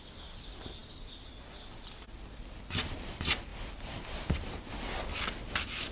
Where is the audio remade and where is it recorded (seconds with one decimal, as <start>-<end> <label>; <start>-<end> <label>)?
0.0-5.9 recorded